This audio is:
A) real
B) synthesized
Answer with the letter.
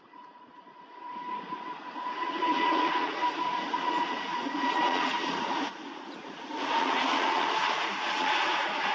B